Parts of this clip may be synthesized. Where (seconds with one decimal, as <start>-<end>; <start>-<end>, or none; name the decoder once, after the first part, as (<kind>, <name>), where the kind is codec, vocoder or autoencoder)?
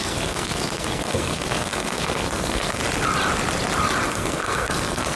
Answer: 0.0-2.8 (codec, SNAC); 4.1-5.2